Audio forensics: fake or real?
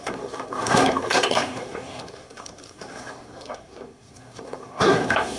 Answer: fake